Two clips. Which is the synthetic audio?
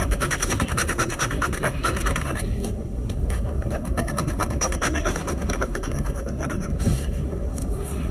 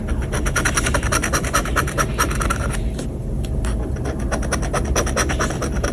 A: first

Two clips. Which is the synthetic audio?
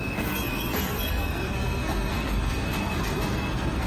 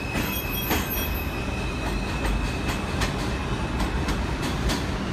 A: first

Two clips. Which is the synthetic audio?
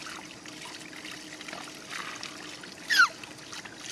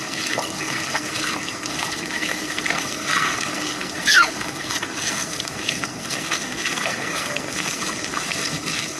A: second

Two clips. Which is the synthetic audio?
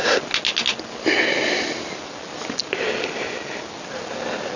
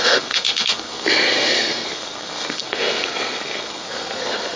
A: second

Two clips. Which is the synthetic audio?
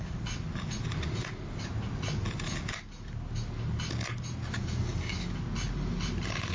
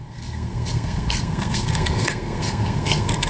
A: second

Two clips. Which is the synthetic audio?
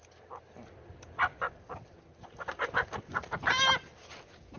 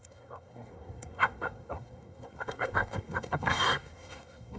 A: second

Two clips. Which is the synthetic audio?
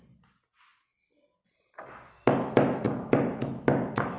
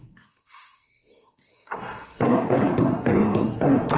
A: second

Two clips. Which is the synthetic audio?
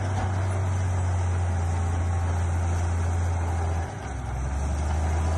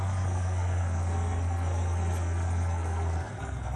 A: second